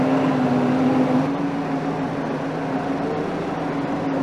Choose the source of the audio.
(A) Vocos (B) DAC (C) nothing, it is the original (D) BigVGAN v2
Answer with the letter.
C